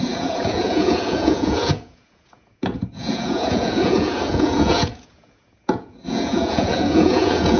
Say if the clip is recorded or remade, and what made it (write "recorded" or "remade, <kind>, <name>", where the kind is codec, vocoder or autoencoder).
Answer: remade, vocoder, Vocos